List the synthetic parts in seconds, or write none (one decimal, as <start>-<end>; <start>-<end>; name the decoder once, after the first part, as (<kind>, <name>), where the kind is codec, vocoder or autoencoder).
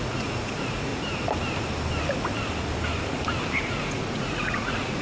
0.0-0.9 (vocoder, Vocos); 3.6-5.0